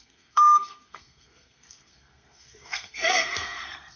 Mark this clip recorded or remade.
remade